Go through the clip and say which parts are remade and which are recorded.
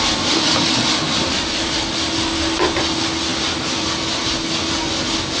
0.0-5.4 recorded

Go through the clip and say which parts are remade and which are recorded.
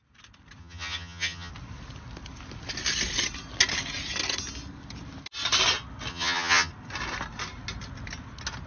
0.0-0.6 recorded; 0.6-1.5 remade; 1.5-6.1 recorded; 6.1-6.7 remade; 6.7-8.7 recorded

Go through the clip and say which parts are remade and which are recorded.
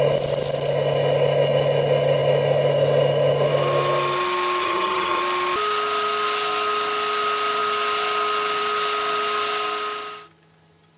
0.0-4.6 recorded; 4.6-5.2 remade; 5.2-11.0 recorded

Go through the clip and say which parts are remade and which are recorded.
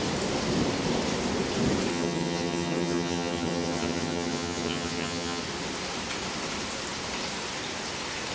0.0-1.9 recorded; 1.9-5.4 remade; 5.4-8.3 recorded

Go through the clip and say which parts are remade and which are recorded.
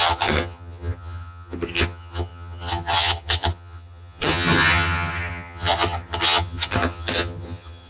0.0-7.9 remade